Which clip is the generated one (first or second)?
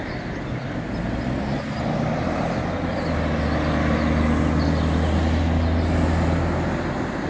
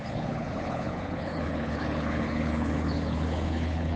second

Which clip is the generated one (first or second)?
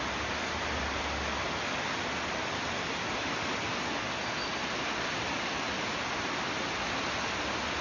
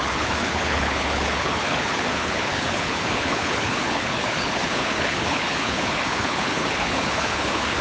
second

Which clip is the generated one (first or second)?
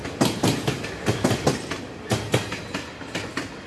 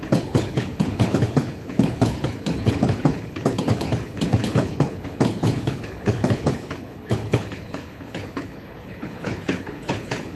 second